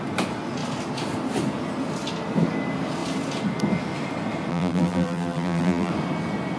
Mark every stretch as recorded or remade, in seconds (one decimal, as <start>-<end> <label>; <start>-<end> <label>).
0.0-4.5 recorded; 4.5-5.9 remade; 5.9-6.6 recorded